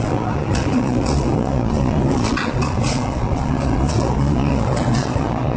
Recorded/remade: remade